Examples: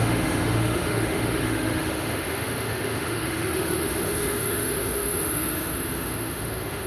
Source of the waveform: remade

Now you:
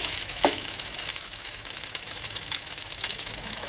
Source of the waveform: remade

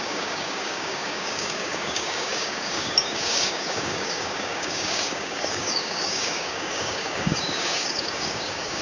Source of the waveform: remade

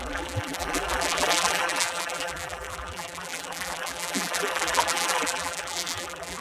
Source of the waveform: remade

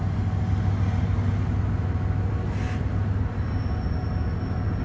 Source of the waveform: recorded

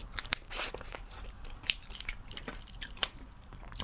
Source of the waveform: remade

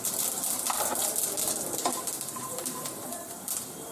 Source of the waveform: remade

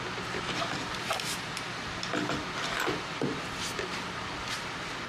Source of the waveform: recorded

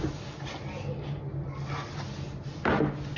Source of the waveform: recorded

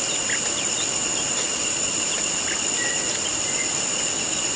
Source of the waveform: recorded